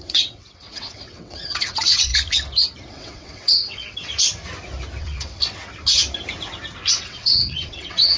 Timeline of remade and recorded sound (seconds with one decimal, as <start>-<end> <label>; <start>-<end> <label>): 0.0-2.1 remade; 2.1-2.9 recorded; 2.9-4.1 remade; 4.1-5.0 recorded; 5.0-5.4 remade; 5.4-6.9 recorded; 6.9-8.2 remade